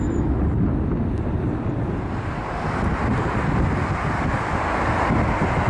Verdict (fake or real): real